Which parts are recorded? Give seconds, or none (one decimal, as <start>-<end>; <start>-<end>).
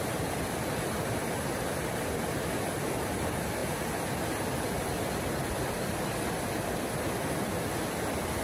0.0-8.4